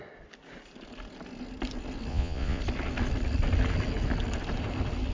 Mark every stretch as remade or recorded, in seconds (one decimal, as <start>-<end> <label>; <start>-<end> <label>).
0.0-2.1 recorded; 2.1-2.6 remade; 2.6-5.1 recorded